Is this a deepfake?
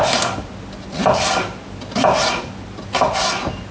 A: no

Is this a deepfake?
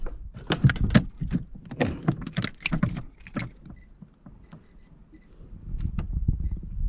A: no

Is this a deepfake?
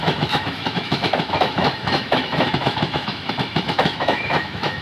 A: yes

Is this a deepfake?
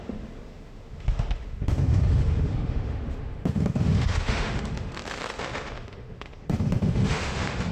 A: yes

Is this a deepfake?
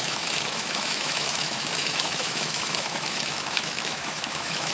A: yes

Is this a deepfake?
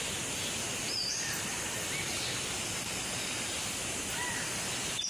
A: no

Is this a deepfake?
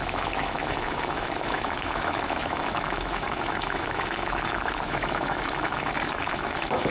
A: yes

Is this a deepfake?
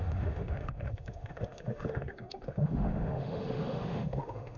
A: yes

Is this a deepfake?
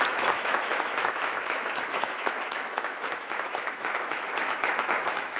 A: yes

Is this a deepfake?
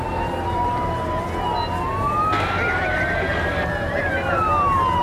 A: no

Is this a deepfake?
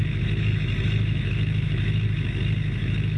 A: yes